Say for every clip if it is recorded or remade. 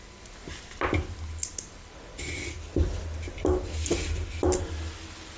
recorded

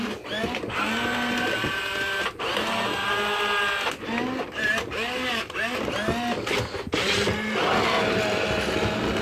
recorded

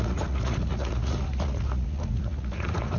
remade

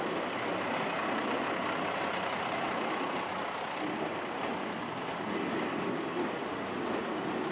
recorded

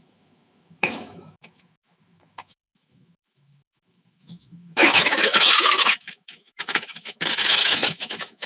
remade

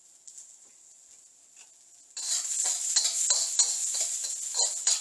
recorded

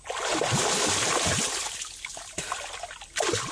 recorded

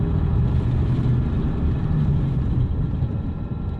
remade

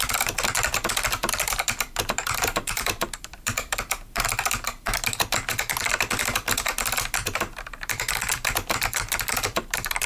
remade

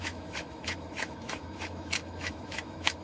remade